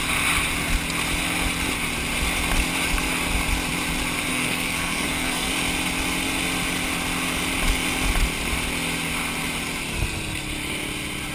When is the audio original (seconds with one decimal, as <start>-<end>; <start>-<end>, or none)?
0.0-4.3; 5.5-11.3